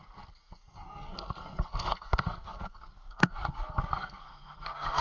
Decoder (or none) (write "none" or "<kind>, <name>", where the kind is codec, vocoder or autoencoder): codec, SNAC